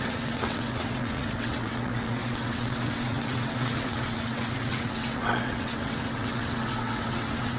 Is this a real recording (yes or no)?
no